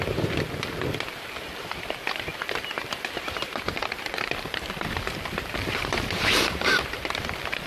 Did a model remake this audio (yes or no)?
yes